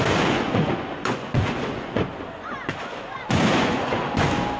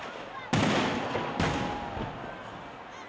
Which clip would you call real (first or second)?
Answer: second